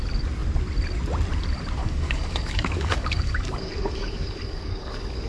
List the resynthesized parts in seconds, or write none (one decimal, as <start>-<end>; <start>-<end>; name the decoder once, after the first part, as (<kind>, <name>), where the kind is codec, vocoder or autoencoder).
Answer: 1.8-5.3 (codec, DAC)